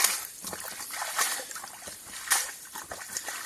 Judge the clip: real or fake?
fake